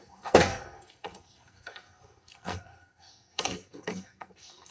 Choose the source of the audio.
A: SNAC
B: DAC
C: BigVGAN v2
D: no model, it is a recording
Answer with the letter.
A